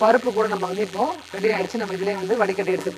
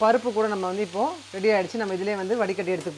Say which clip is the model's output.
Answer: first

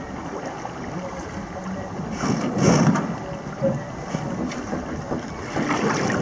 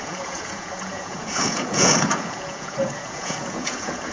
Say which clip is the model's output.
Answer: second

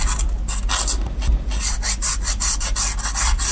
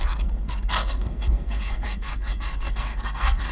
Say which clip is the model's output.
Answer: second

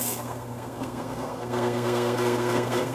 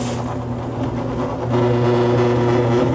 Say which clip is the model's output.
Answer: first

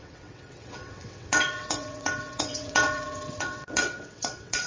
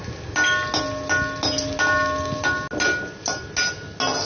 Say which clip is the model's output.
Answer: first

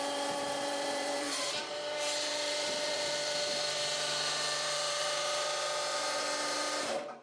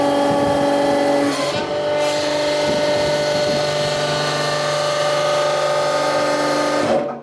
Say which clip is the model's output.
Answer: first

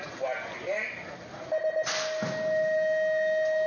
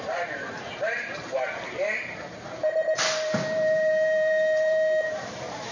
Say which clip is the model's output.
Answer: second